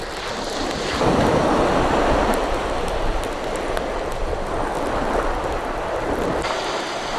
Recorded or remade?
remade